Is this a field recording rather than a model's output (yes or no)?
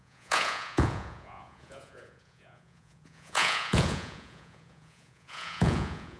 no